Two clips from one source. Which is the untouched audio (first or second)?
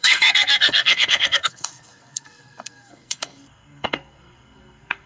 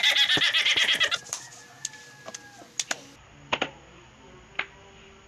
second